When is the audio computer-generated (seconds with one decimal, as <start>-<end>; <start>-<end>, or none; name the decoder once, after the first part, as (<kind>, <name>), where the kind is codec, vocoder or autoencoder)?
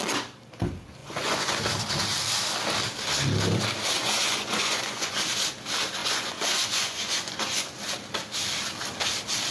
1.0-1.6 (vocoder, Vocos); 4.0-5.2; 6.0-7.7